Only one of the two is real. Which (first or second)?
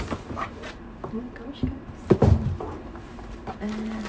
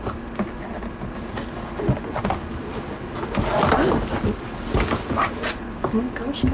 second